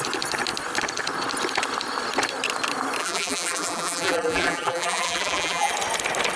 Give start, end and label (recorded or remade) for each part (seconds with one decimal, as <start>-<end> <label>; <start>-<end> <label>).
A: 0.0-3.0 recorded; 3.0-5.7 remade; 5.7-6.4 recorded